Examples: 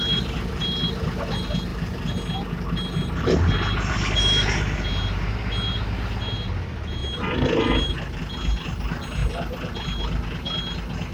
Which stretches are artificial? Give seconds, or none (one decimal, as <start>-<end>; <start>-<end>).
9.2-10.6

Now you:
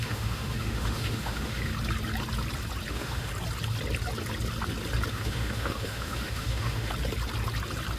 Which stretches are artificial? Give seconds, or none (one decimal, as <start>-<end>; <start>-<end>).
0.0-1.7; 2.9-3.3; 5.1-6.9

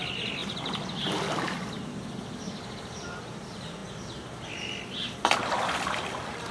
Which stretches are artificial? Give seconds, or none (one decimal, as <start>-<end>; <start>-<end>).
0.0-0.4; 1.9-3.8; 4.5-6.5

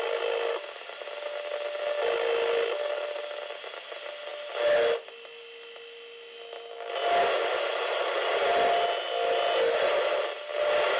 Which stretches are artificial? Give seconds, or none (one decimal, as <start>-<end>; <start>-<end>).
none

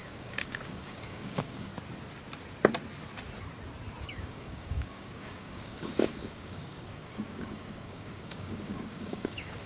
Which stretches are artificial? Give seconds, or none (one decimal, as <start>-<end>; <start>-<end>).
0.0-1.7; 4.0-9.7

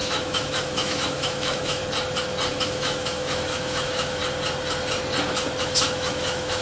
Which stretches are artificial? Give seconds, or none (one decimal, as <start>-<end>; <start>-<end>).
0.0-1.8; 2.5-4.2; 5.6-6.6

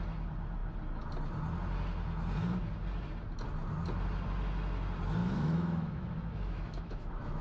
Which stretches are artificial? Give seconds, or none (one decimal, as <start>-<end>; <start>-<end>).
5.2-7.4